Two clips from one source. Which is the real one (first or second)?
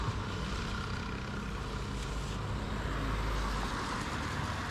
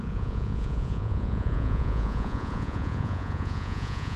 first